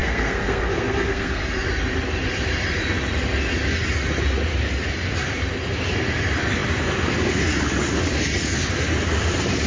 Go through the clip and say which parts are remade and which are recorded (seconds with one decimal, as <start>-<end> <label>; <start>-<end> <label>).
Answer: 0.0-1.4 remade; 1.4-9.7 recorded